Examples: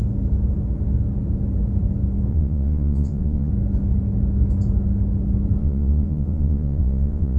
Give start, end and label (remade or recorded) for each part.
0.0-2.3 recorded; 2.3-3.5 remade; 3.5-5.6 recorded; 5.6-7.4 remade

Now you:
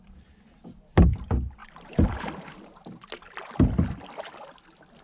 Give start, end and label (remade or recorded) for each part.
0.0-5.0 recorded